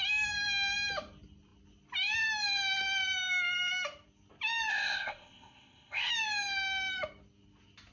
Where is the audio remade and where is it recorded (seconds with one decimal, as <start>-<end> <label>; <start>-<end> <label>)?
0.0-4.7 recorded; 4.7-6.1 remade; 6.1-7.9 recorded

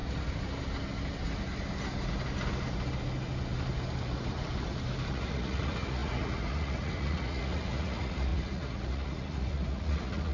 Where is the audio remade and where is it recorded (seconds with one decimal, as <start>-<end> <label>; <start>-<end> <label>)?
0.0-5.1 recorded; 5.1-10.3 remade

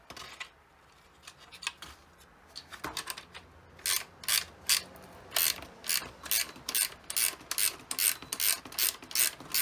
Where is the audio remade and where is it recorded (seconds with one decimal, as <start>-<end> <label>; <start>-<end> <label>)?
0.0-9.6 recorded

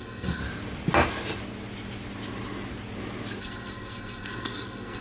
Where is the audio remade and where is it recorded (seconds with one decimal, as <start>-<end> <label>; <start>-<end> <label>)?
0.0-0.4 remade; 0.4-3.4 recorded; 3.4-5.0 remade

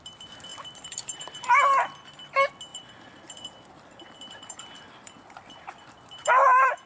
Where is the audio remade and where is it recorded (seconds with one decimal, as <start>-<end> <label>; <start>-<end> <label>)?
0.0-0.5 recorded; 0.5-1.4 remade; 1.4-2.7 recorded; 2.7-6.9 remade

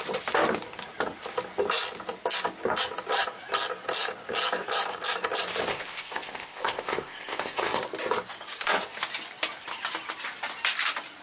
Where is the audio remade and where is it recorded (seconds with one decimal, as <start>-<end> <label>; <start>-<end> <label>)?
0.0-5.7 recorded; 5.7-7.8 remade; 7.8-11.2 recorded

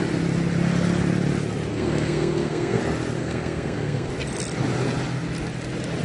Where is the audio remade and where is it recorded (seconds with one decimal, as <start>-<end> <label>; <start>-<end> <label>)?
0.0-1.7 recorded; 1.7-2.8 remade; 2.8-3.2 recorded; 3.2-4.1 remade; 4.1-6.0 recorded